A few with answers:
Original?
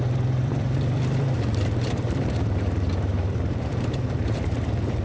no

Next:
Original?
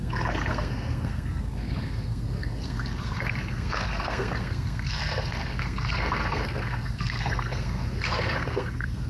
no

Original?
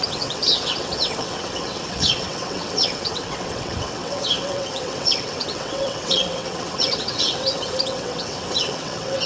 no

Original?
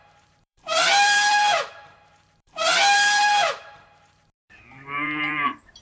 no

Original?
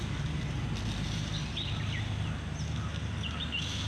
yes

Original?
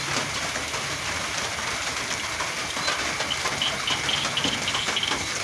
yes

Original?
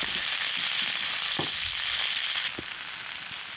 yes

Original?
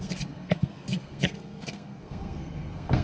no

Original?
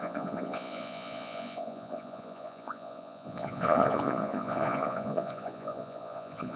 no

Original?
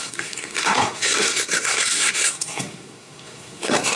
no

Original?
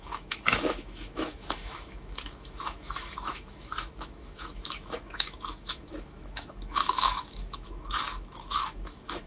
no